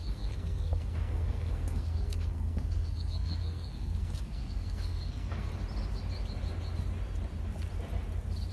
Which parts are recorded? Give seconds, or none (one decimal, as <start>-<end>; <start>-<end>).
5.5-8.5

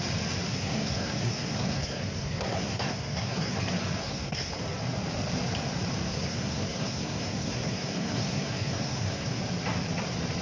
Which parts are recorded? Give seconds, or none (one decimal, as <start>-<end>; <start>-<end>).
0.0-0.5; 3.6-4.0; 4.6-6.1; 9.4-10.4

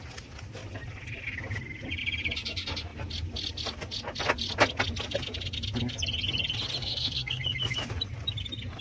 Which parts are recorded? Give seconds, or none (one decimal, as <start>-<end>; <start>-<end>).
0.0-6.8; 7.4-8.8